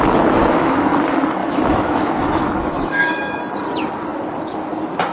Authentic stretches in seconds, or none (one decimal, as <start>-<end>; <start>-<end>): 0.0-0.4; 0.9-1.4; 3.4-5.1

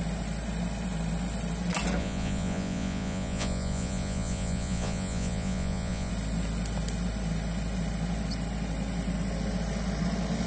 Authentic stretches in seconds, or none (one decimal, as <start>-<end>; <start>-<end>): 0.0-2.0; 6.1-10.5